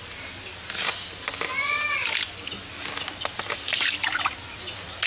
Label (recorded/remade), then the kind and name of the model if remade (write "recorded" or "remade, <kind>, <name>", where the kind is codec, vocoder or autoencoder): recorded